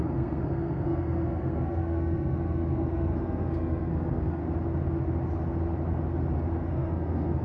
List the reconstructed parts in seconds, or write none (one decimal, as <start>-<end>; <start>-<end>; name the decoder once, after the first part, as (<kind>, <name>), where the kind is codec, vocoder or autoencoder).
0.0-4.4 (codec, SNAC); 6.7-7.4